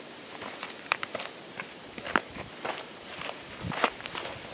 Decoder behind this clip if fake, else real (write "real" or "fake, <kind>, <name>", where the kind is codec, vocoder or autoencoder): fake, vocoder, BigVGAN v2